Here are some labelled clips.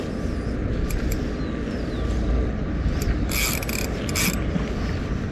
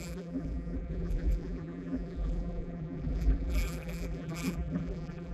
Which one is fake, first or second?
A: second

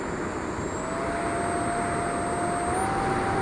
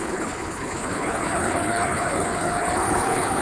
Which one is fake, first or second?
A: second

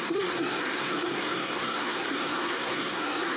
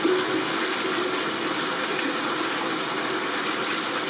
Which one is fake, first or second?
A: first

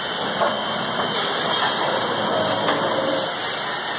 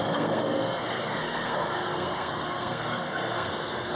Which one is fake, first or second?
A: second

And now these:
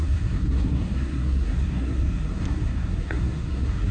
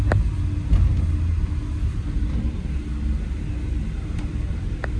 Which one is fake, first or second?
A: first